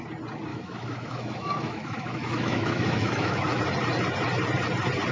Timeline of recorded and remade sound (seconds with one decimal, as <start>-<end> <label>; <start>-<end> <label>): 0.0-0.5 recorded; 0.5-3.6 remade; 3.6-5.1 recorded